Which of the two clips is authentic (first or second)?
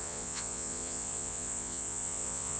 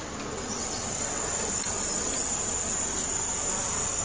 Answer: second